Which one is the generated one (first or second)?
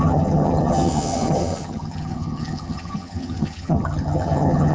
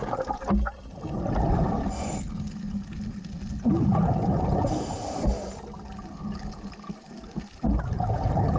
first